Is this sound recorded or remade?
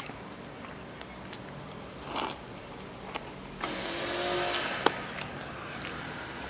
recorded